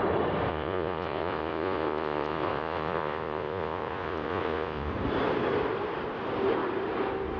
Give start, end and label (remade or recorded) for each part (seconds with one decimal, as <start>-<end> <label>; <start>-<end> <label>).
0.0-0.5 recorded; 0.5-4.9 remade; 4.9-7.4 recorded